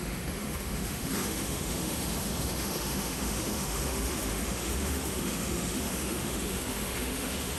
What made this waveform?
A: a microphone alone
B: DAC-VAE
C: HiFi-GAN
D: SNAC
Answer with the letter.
B